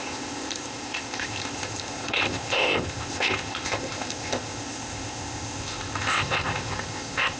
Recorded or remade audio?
remade